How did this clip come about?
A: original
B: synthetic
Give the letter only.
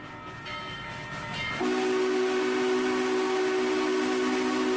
A